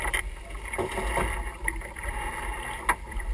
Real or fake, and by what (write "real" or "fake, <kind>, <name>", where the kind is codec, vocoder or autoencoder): real